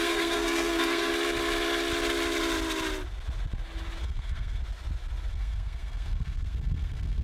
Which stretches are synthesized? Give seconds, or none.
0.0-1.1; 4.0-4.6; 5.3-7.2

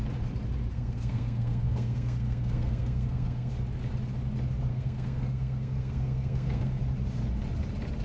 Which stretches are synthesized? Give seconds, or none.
0.7-3.5; 4.7-6.8

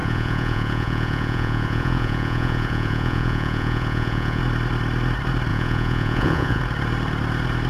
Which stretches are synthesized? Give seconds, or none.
0.0-4.4; 5.5-6.6

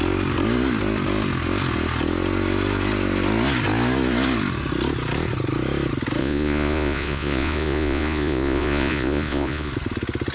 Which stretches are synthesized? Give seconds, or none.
6.2-9.7

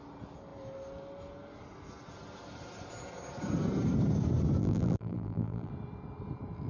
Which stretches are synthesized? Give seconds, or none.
4.6-5.7

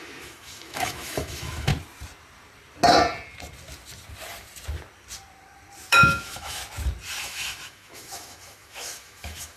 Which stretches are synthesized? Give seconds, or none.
0.0-1.7; 5.9-6.6; 7.2-9.6

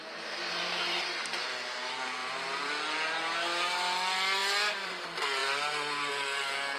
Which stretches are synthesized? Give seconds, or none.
2.2-2.7; 4.4-4.9